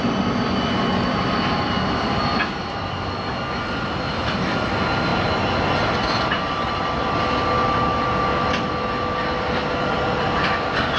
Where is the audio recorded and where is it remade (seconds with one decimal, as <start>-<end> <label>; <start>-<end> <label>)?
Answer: 0.0-11.0 recorded